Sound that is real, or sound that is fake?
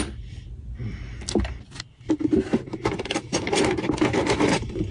real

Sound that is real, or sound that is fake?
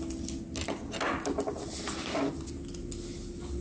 real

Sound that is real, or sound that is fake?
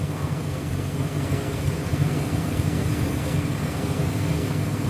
fake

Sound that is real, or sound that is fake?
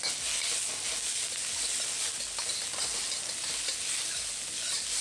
real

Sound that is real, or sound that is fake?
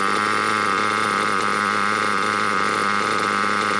real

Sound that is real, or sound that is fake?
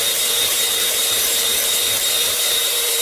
fake